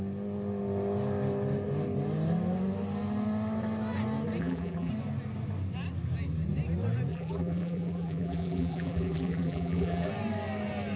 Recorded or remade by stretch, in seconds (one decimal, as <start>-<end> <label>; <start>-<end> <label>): 0.0-4.4 recorded; 4.4-4.9 remade; 4.9-7.1 recorded; 7.1-10.1 remade; 10.1-11.0 recorded